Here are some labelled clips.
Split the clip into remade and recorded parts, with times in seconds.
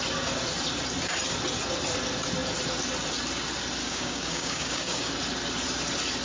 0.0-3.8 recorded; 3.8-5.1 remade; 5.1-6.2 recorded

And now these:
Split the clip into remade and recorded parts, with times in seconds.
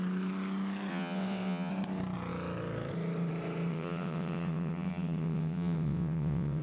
0.0-0.9 recorded; 0.9-1.7 remade; 1.7-3.7 recorded; 3.7-6.6 remade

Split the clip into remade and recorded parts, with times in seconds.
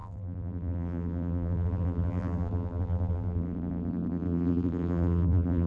0.0-5.7 remade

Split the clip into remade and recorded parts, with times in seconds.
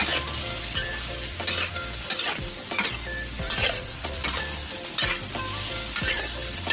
0.0-3.6 recorded; 3.6-4.2 remade; 4.2-6.7 recorded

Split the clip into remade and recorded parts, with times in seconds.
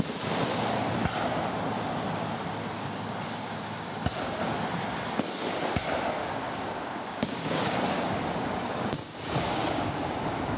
0.0-6.2 recorded; 6.2-10.6 remade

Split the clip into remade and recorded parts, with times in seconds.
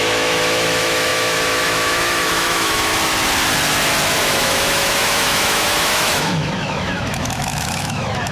0.0-2.9 remade; 2.9-4.2 recorded; 4.2-8.3 remade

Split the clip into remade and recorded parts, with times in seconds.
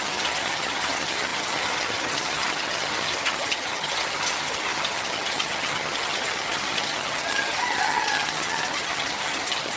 0.0-9.8 remade